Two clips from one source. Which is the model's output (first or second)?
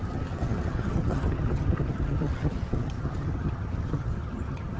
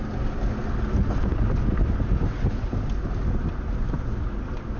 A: first